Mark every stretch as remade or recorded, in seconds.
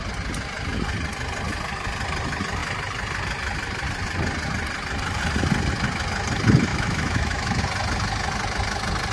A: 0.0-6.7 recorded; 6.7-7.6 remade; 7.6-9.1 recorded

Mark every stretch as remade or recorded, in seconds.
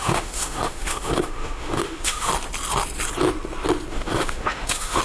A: 0.0-2.3 remade; 2.3-3.9 recorded; 3.9-5.0 remade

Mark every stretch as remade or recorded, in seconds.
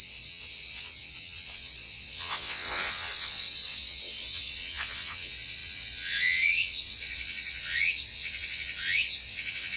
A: 0.0-9.8 remade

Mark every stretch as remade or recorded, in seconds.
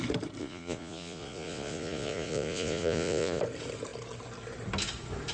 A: 0.0-0.4 recorded; 0.4-3.4 remade; 3.4-5.3 recorded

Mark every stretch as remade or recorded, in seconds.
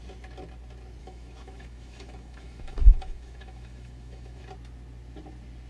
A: 0.0-1.0 recorded; 1.0-4.4 remade; 4.4-5.7 recorded